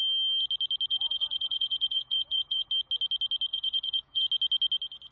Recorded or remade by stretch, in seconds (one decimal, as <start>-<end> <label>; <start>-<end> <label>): 0.0-0.9 recorded; 0.9-2.7 remade; 2.7-3.5 recorded; 3.5-4.2 remade; 4.2-5.1 recorded